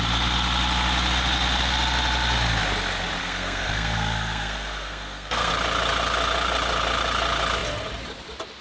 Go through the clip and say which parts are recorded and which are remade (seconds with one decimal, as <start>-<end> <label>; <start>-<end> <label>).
0.0-3.2 recorded; 3.2-5.5 remade; 5.5-8.6 recorded